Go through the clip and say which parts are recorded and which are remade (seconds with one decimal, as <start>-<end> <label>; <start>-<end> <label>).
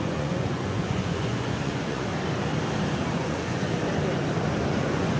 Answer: 0.0-2.1 remade; 2.1-3.1 recorded; 3.1-3.7 remade; 3.7-4.7 recorded; 4.7-5.2 remade